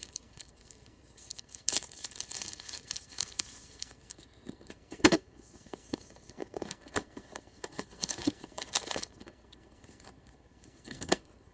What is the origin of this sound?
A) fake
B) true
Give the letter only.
A